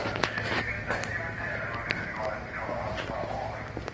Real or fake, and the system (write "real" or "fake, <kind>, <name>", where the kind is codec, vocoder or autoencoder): real